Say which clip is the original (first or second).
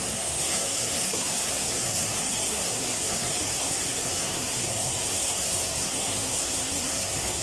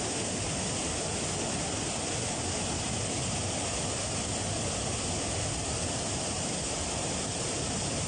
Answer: second